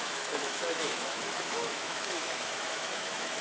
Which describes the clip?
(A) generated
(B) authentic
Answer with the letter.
A